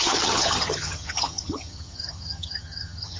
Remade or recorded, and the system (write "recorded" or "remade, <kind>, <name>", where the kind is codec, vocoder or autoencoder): remade, vocoder, HiFi-GAN